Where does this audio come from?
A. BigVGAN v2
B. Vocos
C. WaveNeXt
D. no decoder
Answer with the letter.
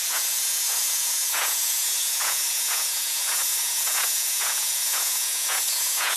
B